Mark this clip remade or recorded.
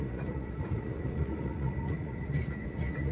remade